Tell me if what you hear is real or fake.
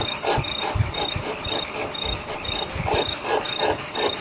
fake